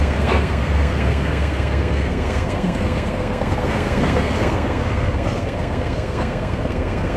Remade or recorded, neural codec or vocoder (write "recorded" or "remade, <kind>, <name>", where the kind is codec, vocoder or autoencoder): remade, codec, SNAC